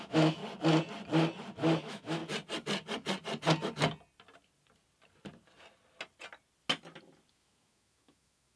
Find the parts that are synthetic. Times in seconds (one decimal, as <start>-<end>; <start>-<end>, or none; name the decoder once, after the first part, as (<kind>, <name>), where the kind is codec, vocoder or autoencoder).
0.0-0.4 (autoencoder, DAC-VAE); 1.8-2.2; 7.3-8.6